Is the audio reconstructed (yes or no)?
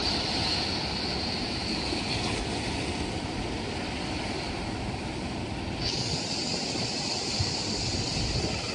no